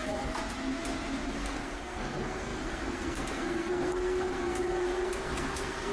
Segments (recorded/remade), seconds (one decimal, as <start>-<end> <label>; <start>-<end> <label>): 0.0-0.4 remade; 0.4-1.3 recorded; 1.3-5.9 remade